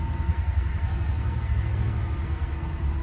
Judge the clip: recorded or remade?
remade